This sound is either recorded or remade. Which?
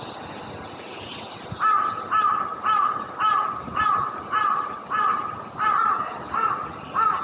recorded